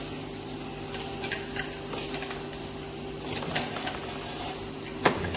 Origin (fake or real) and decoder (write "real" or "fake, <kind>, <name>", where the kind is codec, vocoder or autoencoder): real